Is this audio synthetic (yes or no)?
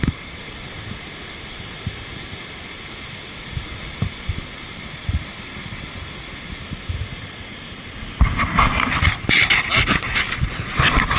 no